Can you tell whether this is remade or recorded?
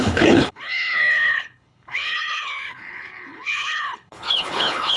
remade